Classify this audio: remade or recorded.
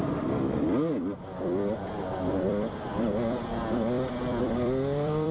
remade